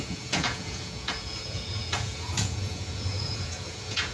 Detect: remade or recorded remade